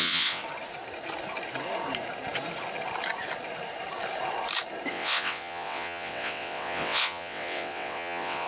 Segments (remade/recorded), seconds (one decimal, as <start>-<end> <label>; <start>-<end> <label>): 0.0-0.4 remade; 0.4-4.9 recorded; 4.9-8.5 remade